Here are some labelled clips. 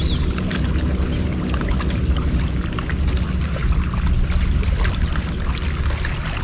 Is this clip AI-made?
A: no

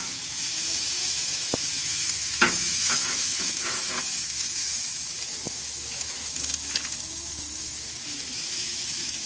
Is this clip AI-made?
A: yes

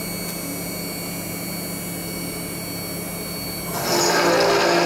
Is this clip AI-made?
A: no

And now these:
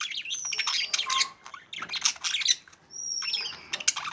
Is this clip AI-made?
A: no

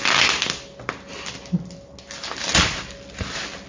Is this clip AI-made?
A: no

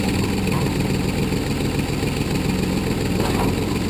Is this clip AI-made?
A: no